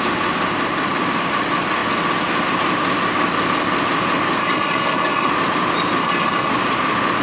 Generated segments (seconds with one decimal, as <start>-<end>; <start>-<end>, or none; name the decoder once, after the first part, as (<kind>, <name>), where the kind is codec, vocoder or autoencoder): 4.4-5.3 (codec, HILCodec); 6.0-6.5